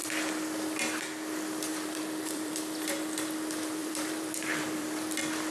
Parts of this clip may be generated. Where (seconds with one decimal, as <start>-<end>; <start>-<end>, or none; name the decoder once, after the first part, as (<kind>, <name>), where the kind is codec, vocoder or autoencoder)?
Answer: 1.7-2.6 (vocoder, BigVGAN v2); 3.8-5.5